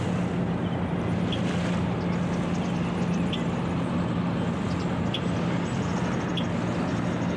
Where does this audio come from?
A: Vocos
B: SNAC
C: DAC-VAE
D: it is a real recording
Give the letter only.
D